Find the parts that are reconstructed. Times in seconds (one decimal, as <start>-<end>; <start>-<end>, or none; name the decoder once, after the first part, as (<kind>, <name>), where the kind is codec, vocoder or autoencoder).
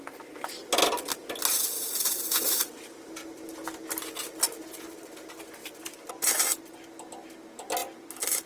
5.6-6.1 (vocoder, BigVGAN v2)